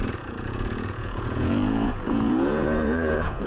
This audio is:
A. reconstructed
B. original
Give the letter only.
A